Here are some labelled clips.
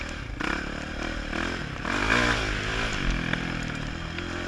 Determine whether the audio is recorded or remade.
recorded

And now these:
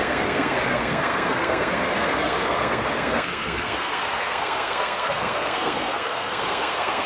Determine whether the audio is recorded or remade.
remade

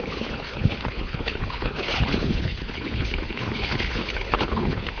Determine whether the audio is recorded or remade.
remade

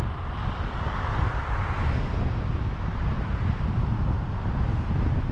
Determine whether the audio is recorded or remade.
recorded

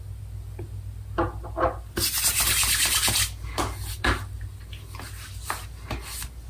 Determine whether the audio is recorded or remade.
recorded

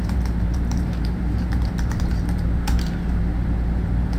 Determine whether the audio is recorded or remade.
remade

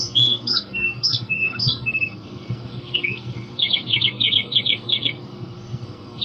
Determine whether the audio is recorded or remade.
remade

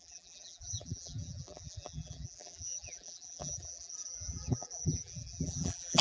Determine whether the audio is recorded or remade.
remade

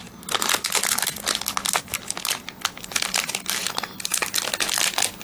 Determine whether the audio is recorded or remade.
recorded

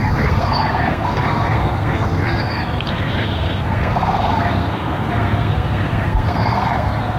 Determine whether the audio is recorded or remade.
remade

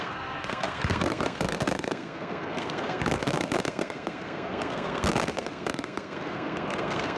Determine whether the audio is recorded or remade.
remade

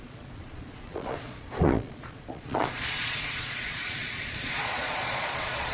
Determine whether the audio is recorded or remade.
remade